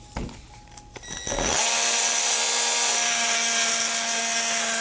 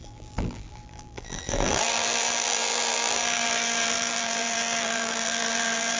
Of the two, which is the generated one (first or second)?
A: second